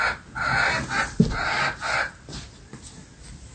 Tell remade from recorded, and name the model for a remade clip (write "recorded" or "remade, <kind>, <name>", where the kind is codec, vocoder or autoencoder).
recorded